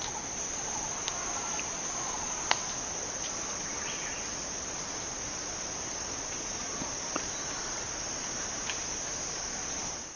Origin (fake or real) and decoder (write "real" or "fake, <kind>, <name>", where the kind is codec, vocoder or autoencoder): fake, vocoder, BigVGAN v2